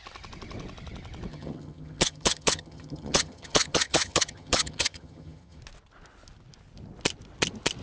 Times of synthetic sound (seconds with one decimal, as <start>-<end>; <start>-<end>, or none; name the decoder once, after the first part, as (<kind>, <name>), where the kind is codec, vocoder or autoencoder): 1.3-5.6 (vocoder, HiFi-GAN)

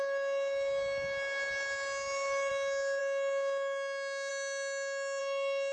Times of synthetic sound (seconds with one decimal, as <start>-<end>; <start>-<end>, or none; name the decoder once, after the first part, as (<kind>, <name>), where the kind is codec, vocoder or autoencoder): 4.3-5.2 (autoencoder, DAC-VAE)

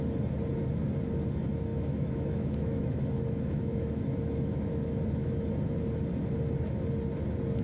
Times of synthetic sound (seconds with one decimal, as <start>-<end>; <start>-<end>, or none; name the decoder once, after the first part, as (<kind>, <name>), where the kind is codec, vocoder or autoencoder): 1.7-5.5 (autoencoder, DAC-VAE)

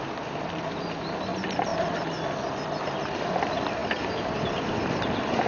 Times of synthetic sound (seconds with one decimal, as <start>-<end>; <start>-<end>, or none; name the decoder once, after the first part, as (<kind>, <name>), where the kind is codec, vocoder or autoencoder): 0.0-1.7 (vocoder, BigVGAN v2); 2.8-5.5

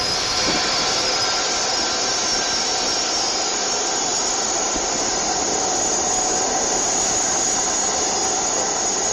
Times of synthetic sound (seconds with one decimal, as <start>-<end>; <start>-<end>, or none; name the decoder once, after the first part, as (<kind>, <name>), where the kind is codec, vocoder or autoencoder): none

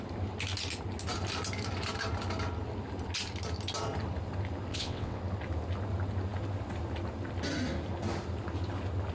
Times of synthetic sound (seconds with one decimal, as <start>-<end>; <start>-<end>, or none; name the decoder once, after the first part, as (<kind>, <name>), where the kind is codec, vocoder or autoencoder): 4.7-5.2 (vocoder, WaveNeXt)

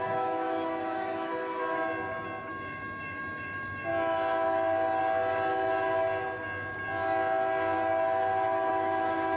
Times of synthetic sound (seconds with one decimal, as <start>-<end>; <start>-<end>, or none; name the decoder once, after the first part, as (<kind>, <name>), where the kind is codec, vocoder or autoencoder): 0.0-1.3 (autoencoder, DAC-VAE); 2.5-3.9; 8.7-9.4